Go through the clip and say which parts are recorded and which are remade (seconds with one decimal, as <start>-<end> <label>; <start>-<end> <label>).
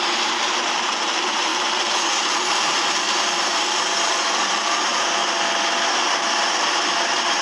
0.0-5.2 remade; 5.2-5.9 recorded; 5.9-7.4 remade